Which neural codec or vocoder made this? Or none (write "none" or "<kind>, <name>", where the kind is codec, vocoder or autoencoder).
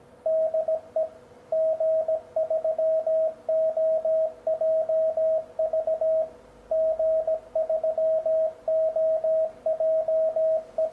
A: none